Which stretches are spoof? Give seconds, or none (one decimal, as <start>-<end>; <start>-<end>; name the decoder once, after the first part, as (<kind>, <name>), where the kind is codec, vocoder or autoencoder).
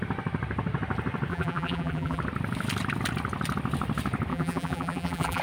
1.3-2.2 (vocoder, BigVGAN v2); 4.3-5.4